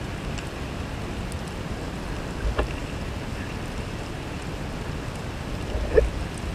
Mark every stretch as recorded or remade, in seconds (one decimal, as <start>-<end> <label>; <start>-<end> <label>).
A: 0.0-6.5 recorded